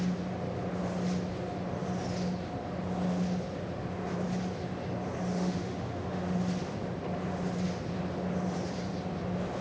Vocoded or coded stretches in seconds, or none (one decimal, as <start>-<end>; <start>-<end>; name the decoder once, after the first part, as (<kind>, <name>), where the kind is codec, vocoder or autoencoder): 5.3-6.4 (autoencoder, DAC-VAE)